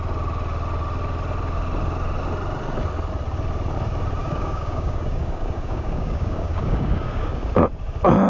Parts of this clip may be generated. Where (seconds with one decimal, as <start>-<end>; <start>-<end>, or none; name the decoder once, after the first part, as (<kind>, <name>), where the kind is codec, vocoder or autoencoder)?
4.2-7.5 (codec, DAC)